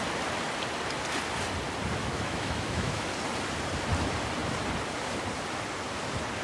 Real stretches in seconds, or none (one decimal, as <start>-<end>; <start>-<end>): 0.0-2.0; 3.1-6.4